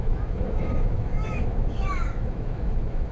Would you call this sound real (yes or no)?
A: no